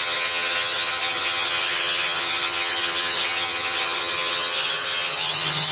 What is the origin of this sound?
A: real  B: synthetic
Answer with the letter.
B